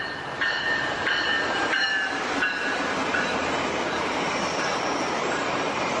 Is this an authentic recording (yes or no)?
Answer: no